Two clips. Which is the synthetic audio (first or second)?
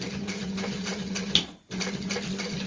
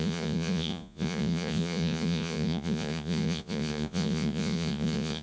second